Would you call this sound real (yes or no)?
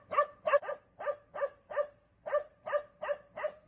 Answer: yes